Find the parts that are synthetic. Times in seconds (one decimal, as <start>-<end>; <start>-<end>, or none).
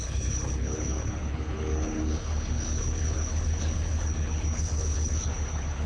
0.0-5.9